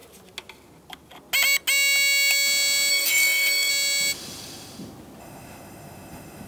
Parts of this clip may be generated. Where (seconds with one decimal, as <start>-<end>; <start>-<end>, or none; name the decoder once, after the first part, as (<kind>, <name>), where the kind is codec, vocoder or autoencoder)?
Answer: 2.9-3.7 (autoencoder, DAC-VAE); 5.2-6.5